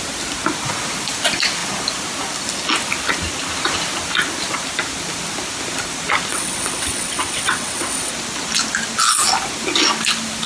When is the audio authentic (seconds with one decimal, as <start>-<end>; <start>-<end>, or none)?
0.0-6.3; 8.1-10.5